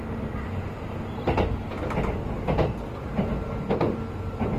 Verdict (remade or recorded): recorded